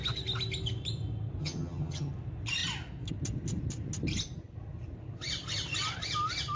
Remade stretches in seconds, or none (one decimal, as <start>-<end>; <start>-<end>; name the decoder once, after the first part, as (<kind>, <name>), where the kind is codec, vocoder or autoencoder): 1.4-2.1 (vocoder, HiFi-GAN)